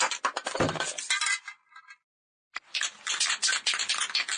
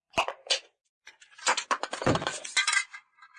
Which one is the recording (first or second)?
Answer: first